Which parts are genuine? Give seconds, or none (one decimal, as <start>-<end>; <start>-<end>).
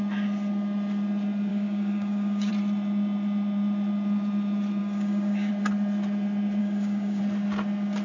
0.0-1.5; 2.5-4.8; 5.5-6.6; 7.2-8.0